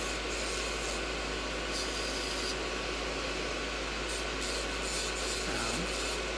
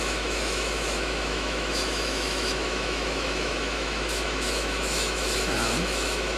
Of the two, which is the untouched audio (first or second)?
first